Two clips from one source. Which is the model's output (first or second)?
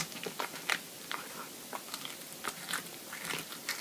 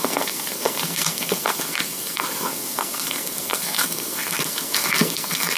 second